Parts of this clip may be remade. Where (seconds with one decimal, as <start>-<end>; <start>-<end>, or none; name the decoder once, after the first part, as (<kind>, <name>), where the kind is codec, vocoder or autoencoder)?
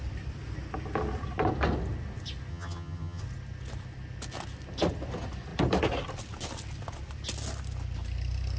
2.5-3.2 (vocoder, HiFi-GAN)